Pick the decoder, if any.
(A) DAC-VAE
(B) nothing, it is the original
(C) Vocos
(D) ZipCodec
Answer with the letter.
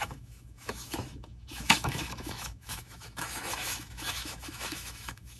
A